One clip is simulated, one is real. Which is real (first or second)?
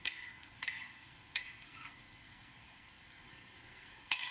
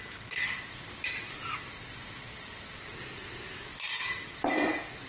second